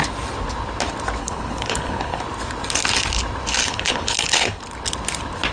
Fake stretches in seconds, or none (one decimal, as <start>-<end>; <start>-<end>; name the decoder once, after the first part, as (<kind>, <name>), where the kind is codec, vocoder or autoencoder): 1.2-2.2 (codec, HILCodec); 3.6-4.6